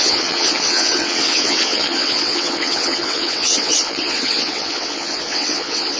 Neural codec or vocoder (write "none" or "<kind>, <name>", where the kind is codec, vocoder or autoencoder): vocoder, WaveNeXt